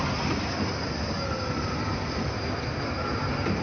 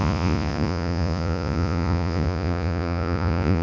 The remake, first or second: second